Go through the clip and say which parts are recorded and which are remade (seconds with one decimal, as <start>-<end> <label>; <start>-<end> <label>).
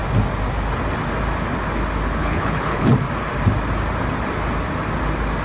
0.0-2.2 recorded; 2.2-2.9 remade; 2.9-5.4 recorded